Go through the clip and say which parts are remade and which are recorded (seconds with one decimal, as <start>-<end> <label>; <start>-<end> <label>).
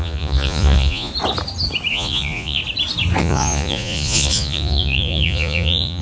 0.0-1.1 remade; 1.1-1.9 recorded; 1.9-2.6 remade; 2.6-3.2 recorded; 3.2-6.0 remade